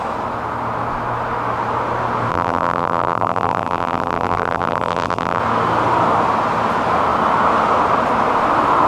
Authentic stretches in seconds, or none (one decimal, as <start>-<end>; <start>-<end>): 0.0-2.3; 5.4-8.9